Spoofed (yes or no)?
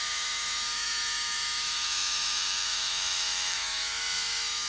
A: yes